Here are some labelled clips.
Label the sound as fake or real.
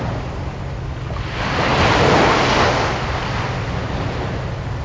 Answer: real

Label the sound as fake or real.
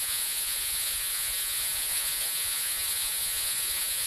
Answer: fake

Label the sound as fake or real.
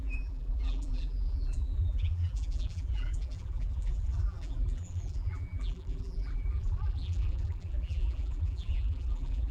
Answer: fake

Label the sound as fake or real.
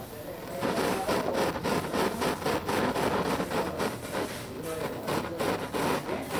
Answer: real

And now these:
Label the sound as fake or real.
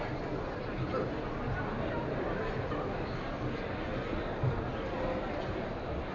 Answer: real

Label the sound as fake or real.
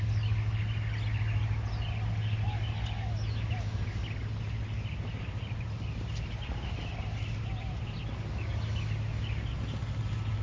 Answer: real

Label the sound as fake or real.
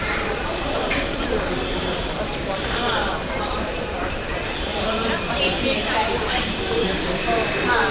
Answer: fake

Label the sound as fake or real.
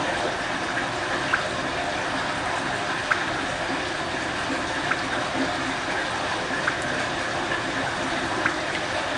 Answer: real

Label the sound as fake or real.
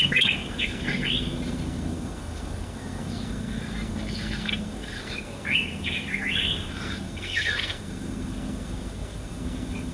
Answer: fake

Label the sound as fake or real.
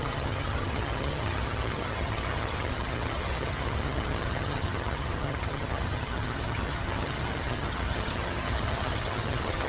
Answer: fake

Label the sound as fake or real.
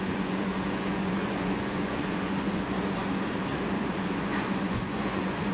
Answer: fake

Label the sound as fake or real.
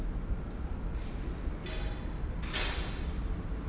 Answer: real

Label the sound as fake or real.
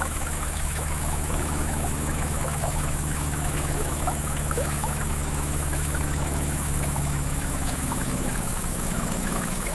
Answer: fake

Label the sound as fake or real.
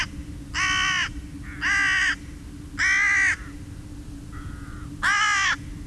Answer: real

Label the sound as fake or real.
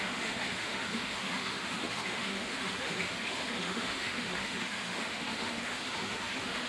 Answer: fake